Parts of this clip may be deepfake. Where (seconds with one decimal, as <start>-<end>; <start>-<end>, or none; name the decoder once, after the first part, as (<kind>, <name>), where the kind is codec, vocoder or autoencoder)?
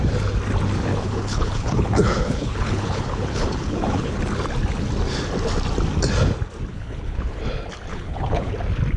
0.9-4.2 (codec, HILCodec); 6.7-7.4; 7.9-8.5